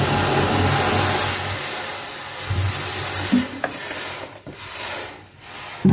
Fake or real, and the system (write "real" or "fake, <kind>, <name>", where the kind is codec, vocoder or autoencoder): real